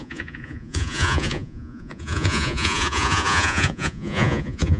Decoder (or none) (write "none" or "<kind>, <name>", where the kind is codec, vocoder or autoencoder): vocoder, Vocos